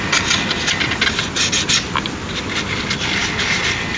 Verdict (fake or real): real